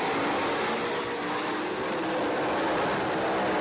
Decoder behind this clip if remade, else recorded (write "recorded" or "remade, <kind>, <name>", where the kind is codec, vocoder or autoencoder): recorded